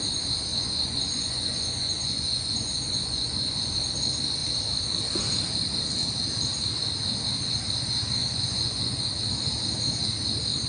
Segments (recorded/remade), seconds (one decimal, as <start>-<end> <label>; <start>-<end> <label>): 0.0-0.5 recorded; 0.5-3.7 remade; 3.7-8.2 recorded; 8.2-9.1 remade; 9.1-10.7 recorded